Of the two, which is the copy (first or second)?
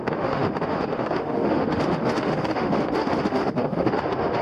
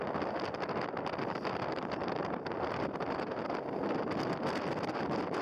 first